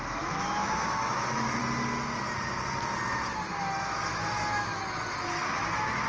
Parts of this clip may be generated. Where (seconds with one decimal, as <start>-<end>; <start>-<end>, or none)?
0.0-1.6; 3.6-4.8; 5.6-6.1